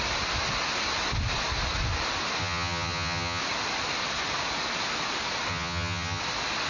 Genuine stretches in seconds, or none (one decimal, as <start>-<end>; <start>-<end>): 0.0-2.4; 3.4-5.5; 6.2-6.7